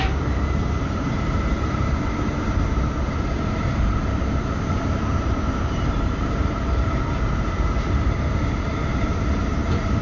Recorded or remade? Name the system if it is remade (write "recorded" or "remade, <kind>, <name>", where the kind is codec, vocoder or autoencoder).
remade, vocoder, BigVGAN v2